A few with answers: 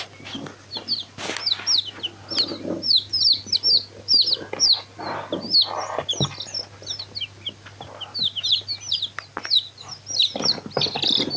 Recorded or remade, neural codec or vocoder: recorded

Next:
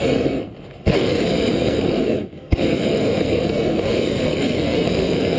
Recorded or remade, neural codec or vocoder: remade, codec, SNAC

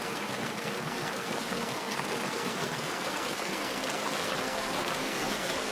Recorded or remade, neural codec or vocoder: remade, codec, SNAC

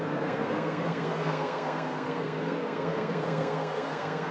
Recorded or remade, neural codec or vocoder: remade, codec, SNAC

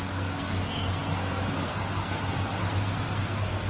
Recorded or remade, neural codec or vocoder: remade, codec, SNAC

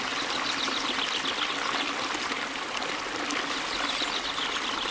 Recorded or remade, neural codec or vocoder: recorded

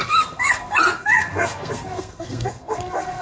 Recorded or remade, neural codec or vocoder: remade, codec, SNAC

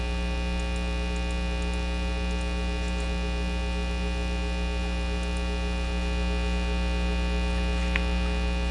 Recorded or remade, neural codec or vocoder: recorded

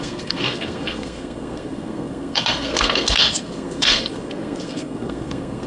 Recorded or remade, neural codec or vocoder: remade, codec, SNAC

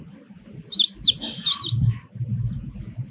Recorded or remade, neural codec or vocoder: recorded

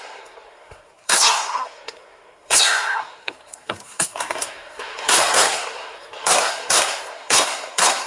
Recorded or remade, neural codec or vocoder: remade, codec, SNAC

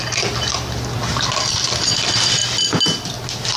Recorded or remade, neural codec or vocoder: recorded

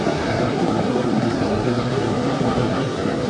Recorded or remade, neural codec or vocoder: remade, codec, SNAC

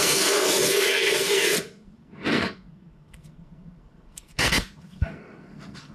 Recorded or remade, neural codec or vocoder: remade, codec, SNAC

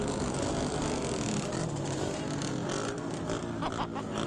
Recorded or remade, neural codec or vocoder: recorded